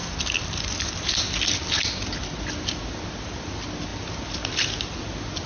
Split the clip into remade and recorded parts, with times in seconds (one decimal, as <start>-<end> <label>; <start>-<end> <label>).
0.0-5.5 recorded